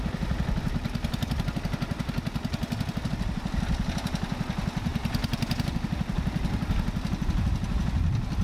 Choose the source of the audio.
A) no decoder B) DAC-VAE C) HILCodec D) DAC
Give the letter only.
A